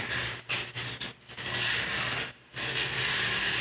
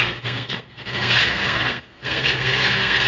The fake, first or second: second